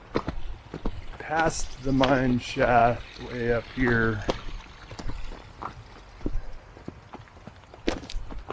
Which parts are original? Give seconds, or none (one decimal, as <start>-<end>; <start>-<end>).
0.0-8.5